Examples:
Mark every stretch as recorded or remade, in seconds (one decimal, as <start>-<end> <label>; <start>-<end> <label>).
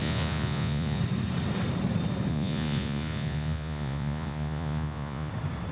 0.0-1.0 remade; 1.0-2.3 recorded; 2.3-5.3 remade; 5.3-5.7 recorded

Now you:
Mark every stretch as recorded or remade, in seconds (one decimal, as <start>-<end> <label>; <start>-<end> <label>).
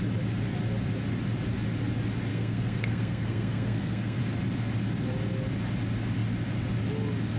0.0-2.3 recorded; 2.3-4.2 remade; 4.2-7.4 recorded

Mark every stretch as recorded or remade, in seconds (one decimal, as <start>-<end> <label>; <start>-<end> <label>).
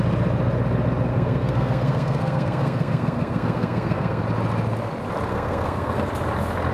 0.0-1.1 recorded; 1.1-4.2 remade; 4.2-5.3 recorded; 5.3-6.1 remade; 6.1-6.7 recorded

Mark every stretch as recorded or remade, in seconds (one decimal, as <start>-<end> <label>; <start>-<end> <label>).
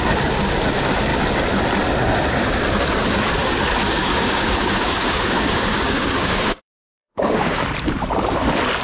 0.0-4.0 recorded; 4.0-7.6 remade; 7.6-8.8 recorded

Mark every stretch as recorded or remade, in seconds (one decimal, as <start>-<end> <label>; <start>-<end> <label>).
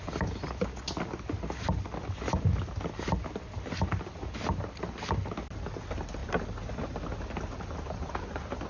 0.0-8.7 recorded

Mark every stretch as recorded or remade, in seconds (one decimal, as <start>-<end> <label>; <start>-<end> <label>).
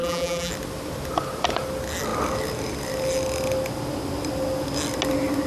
0.0-0.5 remade; 0.5-5.5 recorded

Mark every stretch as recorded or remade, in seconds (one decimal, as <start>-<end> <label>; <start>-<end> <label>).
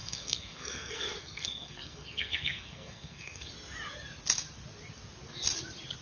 0.0-3.5 remade; 3.5-6.0 recorded